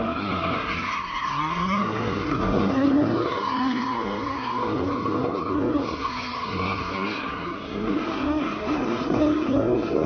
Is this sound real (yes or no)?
no